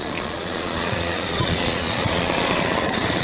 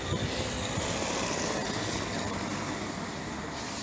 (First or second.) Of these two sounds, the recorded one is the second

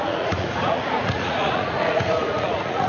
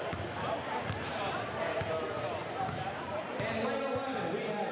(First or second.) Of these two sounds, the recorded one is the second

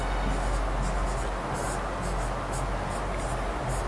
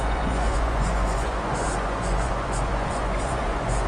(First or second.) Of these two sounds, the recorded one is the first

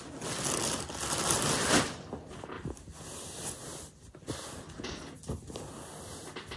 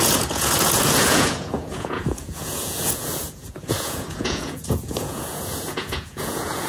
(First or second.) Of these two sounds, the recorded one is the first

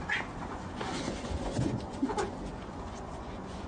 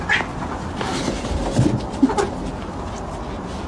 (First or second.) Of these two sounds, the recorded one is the second